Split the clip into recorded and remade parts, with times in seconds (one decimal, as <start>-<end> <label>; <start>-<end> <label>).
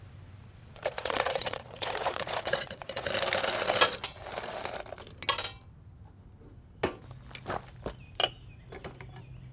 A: 0.0-0.6 recorded; 0.6-3.1 remade; 3.1-9.5 recorded